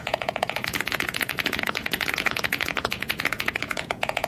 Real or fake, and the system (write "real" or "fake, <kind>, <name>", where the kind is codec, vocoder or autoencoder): fake, vocoder, Vocos